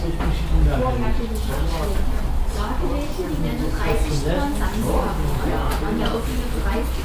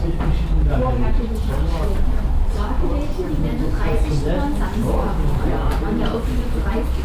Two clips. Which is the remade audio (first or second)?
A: second